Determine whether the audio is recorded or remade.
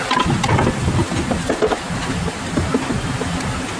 recorded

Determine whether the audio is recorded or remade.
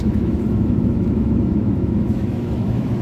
remade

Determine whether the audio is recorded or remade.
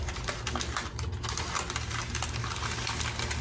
recorded